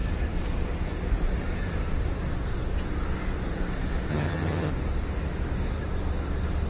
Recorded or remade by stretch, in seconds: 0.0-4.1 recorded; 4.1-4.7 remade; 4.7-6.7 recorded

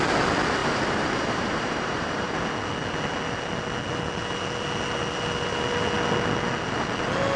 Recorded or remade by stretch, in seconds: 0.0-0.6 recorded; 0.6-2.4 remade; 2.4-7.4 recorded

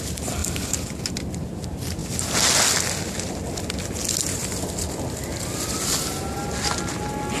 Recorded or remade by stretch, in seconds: 0.0-0.4 recorded; 0.4-1.1 remade; 1.1-7.4 recorded

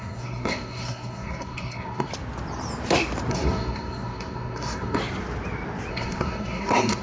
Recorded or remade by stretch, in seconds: 0.0-2.1 remade; 2.1-3.3 recorded; 3.3-5.0 remade; 5.0-5.9 recorded; 5.9-7.0 remade

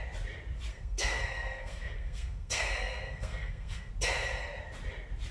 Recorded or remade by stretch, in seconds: 0.0-0.7 recorded; 0.7-3.9 remade; 3.9-5.3 recorded

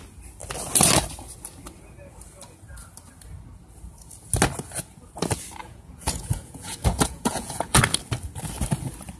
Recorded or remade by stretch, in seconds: 0.0-5.6 recorded; 5.6-7.8 remade; 7.8-9.2 recorded